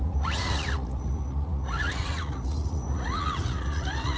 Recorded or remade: remade